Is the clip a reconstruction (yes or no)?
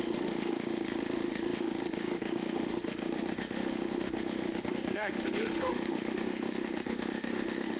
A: yes